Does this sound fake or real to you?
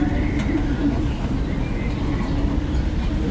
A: real